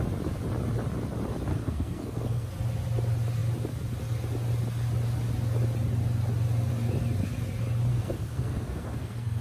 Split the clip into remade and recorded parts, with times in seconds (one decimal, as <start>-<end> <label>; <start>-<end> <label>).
0.0-1.5 recorded; 1.5-2.5 remade; 2.5-7.9 recorded; 7.9-9.4 remade